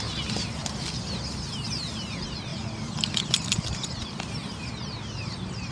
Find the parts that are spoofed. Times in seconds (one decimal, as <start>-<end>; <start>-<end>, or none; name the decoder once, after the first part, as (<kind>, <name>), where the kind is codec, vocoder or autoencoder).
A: 2.5-4.7 (vocoder, BigVGAN v2)